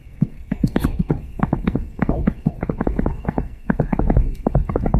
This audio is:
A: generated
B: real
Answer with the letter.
A